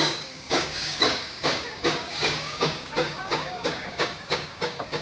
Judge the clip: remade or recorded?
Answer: remade